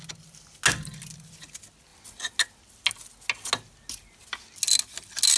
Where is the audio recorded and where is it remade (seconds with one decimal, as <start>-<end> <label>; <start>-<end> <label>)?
0.0-5.4 recorded